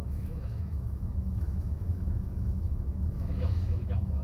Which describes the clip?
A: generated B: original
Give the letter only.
A